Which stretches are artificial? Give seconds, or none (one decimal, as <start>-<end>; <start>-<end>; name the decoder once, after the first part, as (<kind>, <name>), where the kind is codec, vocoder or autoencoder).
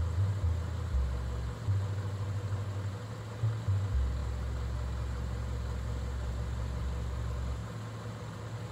none